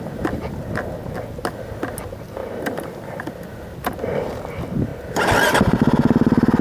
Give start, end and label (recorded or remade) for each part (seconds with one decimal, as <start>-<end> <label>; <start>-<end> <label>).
0.0-6.6 recorded